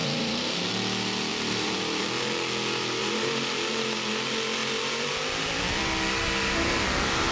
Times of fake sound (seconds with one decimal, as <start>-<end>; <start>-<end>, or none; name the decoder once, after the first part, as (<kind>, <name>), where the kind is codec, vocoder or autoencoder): 0.0-0.6 (vocoder, BigVGAN v2); 1.3-2.0; 3.0-3.7; 4.6-5.8